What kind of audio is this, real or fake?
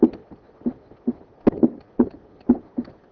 real